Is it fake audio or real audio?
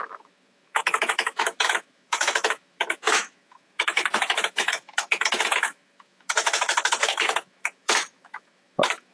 fake